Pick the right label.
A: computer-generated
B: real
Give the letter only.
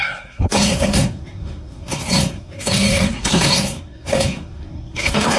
A